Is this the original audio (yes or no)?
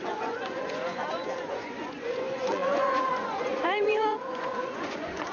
no